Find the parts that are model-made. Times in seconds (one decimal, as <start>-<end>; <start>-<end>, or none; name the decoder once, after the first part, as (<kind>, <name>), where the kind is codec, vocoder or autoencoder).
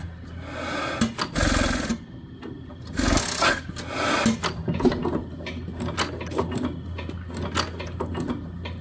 none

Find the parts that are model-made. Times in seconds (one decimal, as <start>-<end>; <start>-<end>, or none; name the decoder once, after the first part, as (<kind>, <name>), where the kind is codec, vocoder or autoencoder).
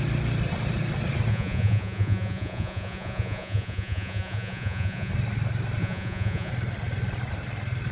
1.3-5.1 (vocoder, Vocos); 5.8-6.5